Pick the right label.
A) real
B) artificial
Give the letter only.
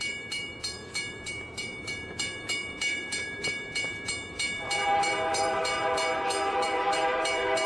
B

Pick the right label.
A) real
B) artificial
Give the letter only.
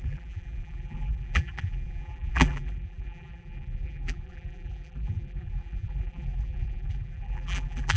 B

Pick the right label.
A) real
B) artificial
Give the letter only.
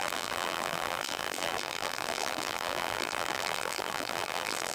B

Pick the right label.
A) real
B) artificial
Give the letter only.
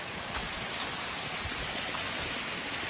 B